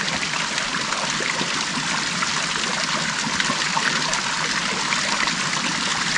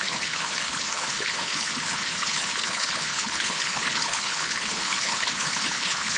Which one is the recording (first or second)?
first